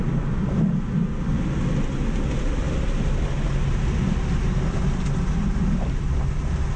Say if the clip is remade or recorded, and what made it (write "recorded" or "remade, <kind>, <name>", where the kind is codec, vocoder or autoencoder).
recorded